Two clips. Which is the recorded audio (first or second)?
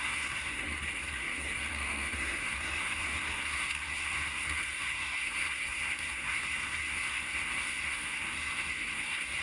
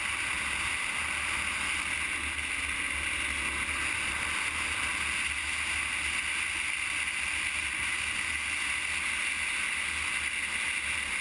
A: second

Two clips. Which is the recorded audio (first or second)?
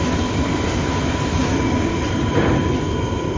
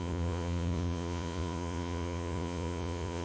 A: first